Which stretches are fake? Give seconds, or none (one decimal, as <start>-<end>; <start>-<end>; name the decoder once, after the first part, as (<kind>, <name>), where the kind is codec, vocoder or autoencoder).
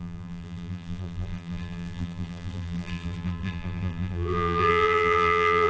0.0-5.7 (vocoder, BigVGAN v2)